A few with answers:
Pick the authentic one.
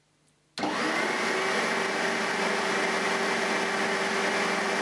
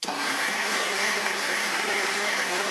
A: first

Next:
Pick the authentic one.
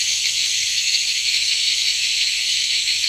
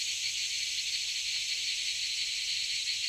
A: second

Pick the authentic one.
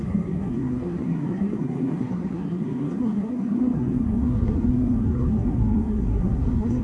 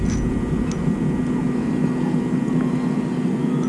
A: second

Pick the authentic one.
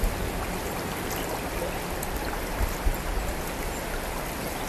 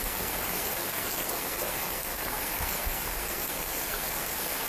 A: first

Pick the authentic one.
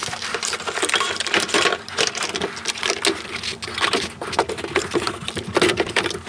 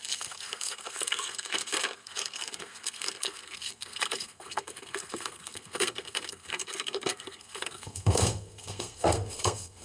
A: first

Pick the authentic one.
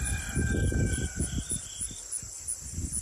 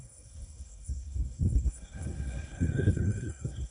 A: first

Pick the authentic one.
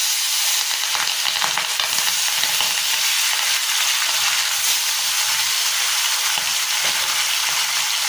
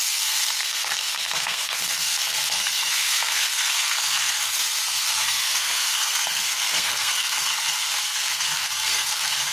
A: first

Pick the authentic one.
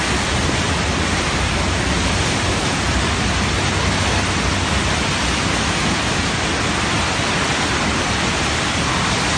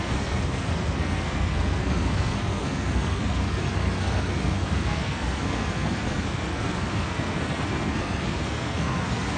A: first